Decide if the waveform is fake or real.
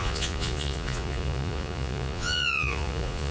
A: fake